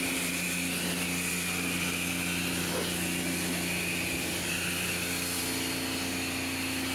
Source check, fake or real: real